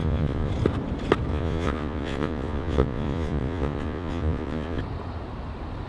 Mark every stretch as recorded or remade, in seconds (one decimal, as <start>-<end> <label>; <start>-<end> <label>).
0.0-0.5 remade; 0.5-1.3 recorded; 1.3-4.8 remade; 4.8-5.9 recorded